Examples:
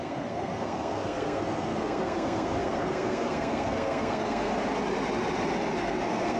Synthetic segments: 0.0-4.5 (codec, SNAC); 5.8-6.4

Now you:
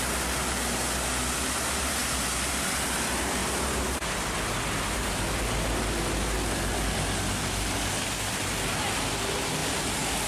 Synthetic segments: none

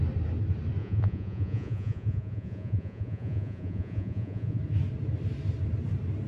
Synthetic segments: 0.8-4.6 (vocoder, Vocos)

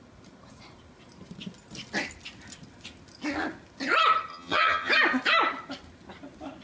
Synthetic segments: 4.3-4.9 (vocoder, HiFi-GAN)